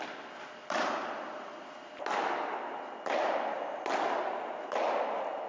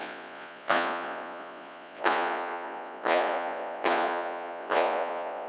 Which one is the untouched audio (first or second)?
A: first